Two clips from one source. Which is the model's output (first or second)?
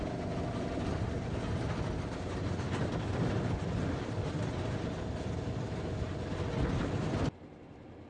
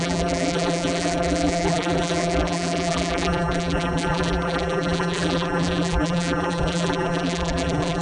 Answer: second